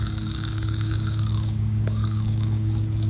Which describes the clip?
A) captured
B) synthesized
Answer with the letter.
B